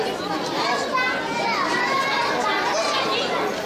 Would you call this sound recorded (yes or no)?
yes